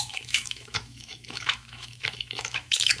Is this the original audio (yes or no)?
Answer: no